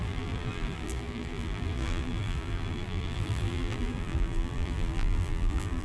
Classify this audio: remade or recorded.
remade